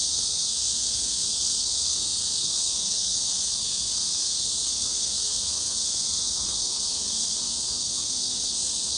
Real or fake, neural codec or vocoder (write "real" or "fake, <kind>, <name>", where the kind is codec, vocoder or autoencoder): fake, codec, SNAC